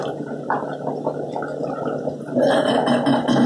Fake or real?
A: real